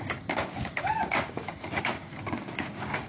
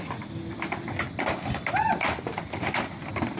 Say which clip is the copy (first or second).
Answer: first